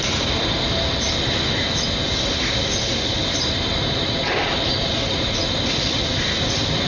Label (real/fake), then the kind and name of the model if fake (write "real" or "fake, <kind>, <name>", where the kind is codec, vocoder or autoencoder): real